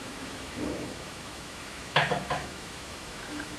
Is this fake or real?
fake